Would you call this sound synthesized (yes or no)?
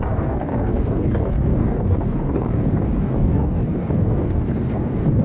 yes